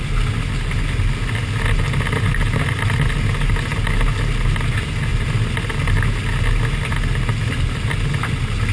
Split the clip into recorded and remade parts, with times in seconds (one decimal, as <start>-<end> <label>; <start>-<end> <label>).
0.0-8.7 recorded